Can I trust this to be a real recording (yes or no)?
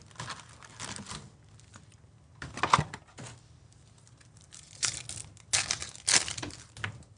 yes